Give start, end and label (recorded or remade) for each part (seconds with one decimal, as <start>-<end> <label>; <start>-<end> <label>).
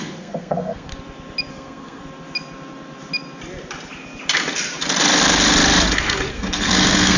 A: 0.0-0.9 remade; 0.9-1.5 recorded; 1.5-2.0 remade; 2.0-6.3 recorded; 6.3-7.2 remade